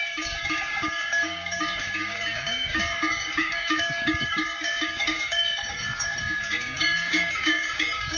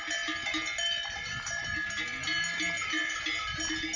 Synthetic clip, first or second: first